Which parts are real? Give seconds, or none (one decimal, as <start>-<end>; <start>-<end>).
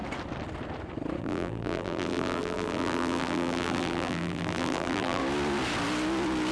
0.0-1.2; 5.2-6.5